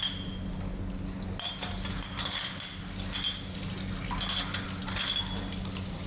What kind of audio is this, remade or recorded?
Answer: recorded